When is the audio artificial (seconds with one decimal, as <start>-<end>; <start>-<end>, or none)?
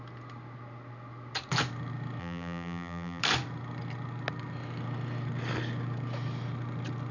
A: 2.2-3.2